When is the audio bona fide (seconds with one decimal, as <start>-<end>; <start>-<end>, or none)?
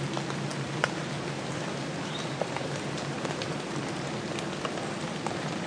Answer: 0.0-0.5; 3.7-5.7